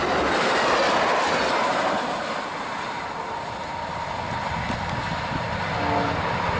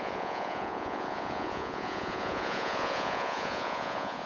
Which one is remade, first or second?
second